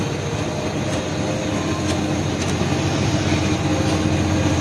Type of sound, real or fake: real